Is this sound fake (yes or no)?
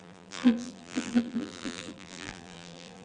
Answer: yes